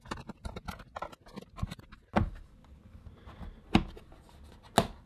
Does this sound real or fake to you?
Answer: real